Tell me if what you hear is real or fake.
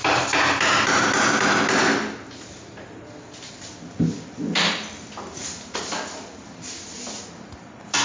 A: real